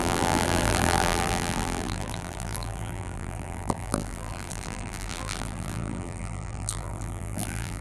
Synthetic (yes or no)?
yes